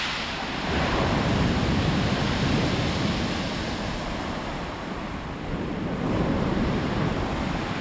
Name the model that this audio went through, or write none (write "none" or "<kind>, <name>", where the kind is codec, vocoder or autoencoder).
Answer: none